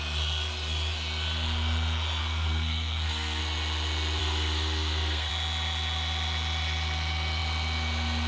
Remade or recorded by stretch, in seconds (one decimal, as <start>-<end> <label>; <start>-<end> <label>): 0.0-2.2 recorded; 2.2-3.4 remade; 3.4-4.2 recorded; 4.2-5.3 remade; 5.3-8.3 recorded